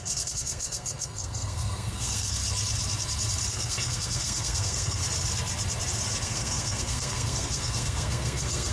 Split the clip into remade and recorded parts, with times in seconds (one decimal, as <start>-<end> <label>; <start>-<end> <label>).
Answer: 0.0-2.4 remade; 2.4-3.5 recorded; 3.5-5.0 remade; 5.0-6.2 recorded; 6.2-8.7 remade